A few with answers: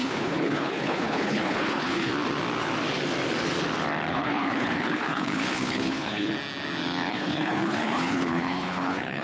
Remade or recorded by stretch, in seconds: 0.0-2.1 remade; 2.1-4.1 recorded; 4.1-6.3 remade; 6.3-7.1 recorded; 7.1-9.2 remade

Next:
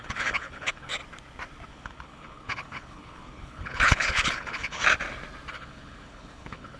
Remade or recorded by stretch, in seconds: 0.0-0.9 remade; 0.9-1.7 recorded; 1.7-4.8 remade; 4.8-5.5 recorded; 5.5-6.8 remade

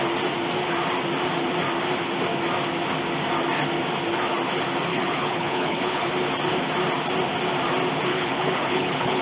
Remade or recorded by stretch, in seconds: 0.0-4.9 recorded; 4.9-6.1 remade; 6.1-8.1 recorded; 8.1-9.2 remade

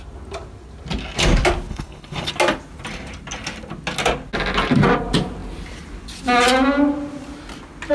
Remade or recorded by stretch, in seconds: 0.0-1.7 recorded; 1.7-2.3 remade; 2.3-7.9 recorded

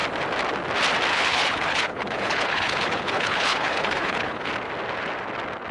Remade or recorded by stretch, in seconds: 0.0-1.1 recorded; 1.1-4.5 remade; 4.5-5.7 recorded

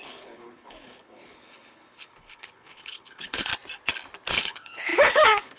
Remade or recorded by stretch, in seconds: 0.0-3.5 remade; 3.5-4.3 recorded; 4.3-5.6 remade

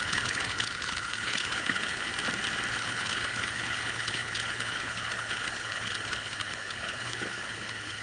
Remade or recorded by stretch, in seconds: 0.0-2.1 remade; 2.1-2.7 recorded; 2.7-8.0 remade